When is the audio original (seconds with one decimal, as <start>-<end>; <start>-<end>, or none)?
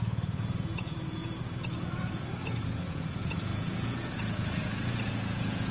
none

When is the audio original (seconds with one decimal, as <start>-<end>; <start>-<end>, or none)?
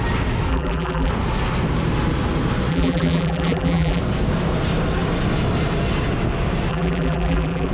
0.0-0.5; 1.1-2.7; 4.0-6.7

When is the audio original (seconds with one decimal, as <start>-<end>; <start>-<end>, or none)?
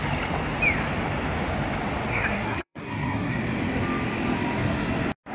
0.0-2.1; 3.4-5.3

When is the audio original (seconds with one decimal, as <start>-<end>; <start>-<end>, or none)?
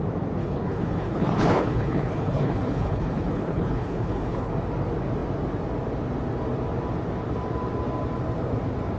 0.0-0.4; 4.5-9.0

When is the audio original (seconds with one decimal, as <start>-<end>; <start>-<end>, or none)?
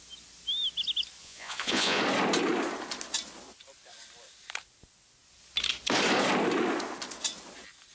0.0-1.2; 2.0-7.9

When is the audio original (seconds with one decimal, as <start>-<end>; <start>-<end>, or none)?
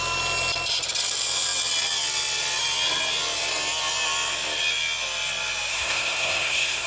0.0-5.7